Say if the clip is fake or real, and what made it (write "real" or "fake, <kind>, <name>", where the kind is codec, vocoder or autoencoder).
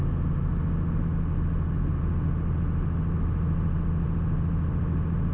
real